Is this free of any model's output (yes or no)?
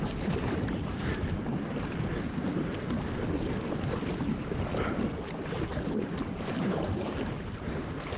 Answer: yes